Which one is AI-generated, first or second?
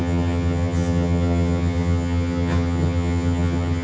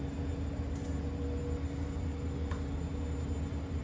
first